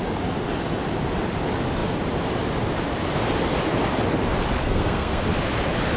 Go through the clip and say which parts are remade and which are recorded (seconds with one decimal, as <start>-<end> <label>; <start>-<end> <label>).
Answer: 0.0-4.6 recorded; 4.6-5.2 remade; 5.2-6.0 recorded